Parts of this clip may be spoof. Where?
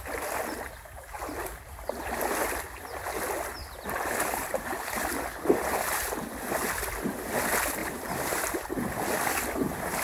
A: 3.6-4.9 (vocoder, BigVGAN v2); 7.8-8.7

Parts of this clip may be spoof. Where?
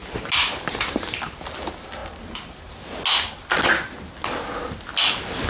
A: 1.1-2.0 (vocoder, BigVGAN v2)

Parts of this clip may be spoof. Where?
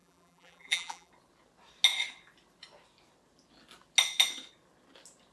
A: 0.0-1.1 (vocoder, BigVGAN v2)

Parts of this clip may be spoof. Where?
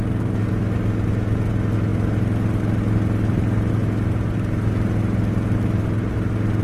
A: none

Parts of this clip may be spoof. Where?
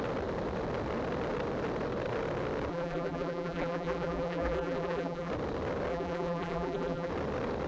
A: 2.7-5.3 (vocoder, BigVGAN v2); 5.9-7.1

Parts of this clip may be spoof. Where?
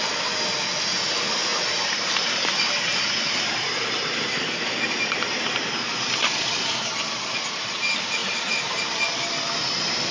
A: 1.5-2.3 (vocoder, BigVGAN v2); 2.9-6.7; 8.2-8.8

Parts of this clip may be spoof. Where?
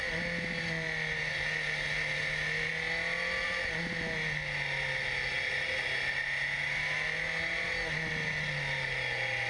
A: none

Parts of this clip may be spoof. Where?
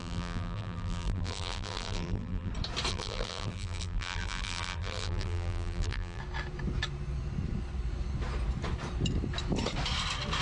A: 0.0-2.5 (vocoder, BigVGAN v2); 2.9-6.2